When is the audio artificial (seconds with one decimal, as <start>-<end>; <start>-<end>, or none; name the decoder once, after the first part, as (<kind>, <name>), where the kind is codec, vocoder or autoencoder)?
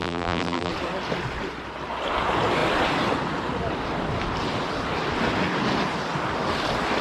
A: 0.0-0.7 (vocoder, BigVGAN v2)